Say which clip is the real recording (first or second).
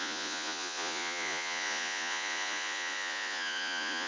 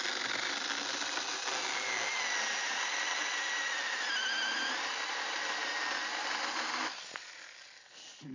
second